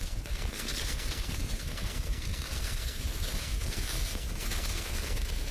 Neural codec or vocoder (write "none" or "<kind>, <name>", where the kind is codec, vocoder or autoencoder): codec, SNAC